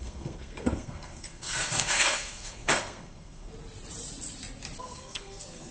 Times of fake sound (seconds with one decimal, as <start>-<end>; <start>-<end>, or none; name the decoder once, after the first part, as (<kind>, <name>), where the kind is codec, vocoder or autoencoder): 0.0-3.5 (codec, SNAC); 4.8-5.7